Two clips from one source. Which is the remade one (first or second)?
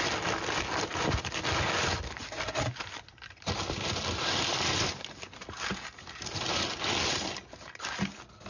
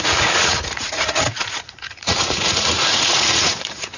second